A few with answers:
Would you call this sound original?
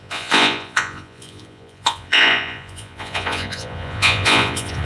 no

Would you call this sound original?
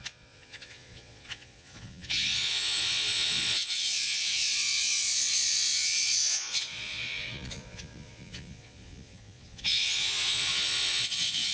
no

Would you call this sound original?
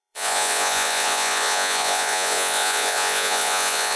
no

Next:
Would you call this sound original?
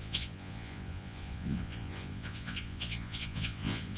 no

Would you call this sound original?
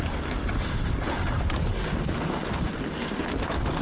yes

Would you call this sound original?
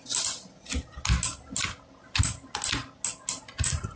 yes